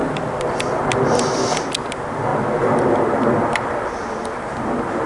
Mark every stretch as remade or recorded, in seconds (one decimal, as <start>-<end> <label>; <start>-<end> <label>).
0.0-5.1 recorded